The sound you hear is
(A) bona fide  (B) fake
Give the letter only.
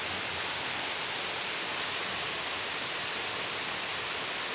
A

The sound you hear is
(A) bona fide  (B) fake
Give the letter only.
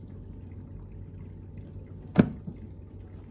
A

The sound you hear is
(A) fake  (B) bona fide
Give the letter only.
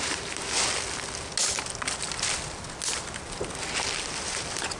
B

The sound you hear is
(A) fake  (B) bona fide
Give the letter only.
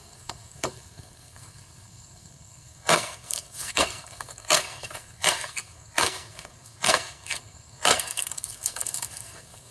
A